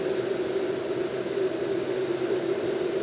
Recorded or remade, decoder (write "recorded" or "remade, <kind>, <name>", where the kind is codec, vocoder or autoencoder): recorded